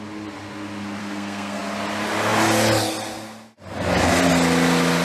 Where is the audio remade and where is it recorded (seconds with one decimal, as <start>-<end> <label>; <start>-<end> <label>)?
0.0-1.0 recorded; 1.0-1.6 remade; 1.6-5.0 recorded